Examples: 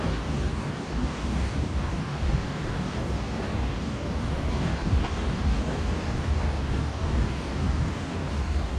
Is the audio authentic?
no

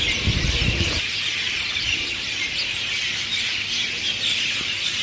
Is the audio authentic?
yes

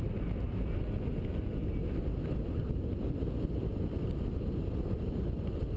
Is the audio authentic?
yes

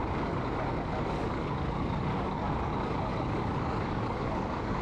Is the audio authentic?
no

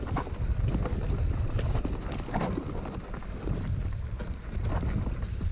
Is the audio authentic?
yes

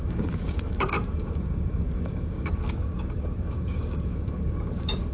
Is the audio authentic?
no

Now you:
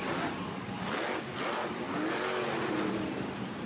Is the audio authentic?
yes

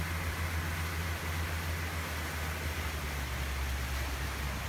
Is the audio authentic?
yes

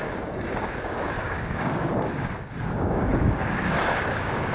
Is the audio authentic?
no